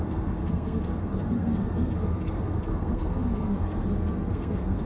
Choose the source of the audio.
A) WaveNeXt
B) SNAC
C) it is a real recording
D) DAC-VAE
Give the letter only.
B